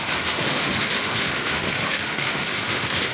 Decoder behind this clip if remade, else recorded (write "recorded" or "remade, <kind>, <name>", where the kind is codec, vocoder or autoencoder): remade, autoencoder, DAC-VAE